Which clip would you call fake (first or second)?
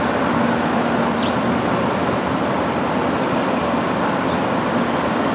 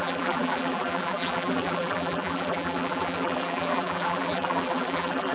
second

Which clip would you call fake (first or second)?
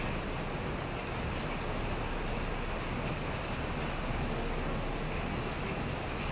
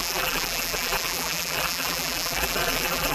second